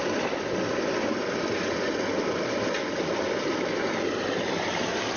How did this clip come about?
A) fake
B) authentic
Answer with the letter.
B